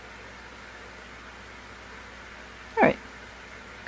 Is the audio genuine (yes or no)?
yes